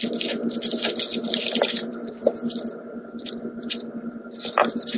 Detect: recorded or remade recorded